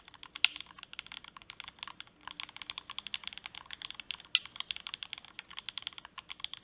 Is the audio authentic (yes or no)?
yes